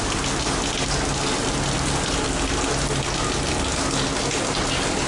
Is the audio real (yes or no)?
yes